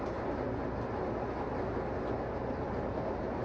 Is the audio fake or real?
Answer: real